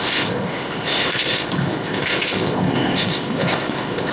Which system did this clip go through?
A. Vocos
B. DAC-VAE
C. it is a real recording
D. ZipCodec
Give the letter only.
D